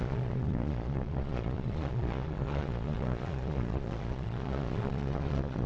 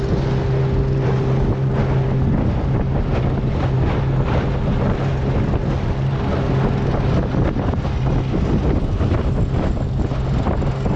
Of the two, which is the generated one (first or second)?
first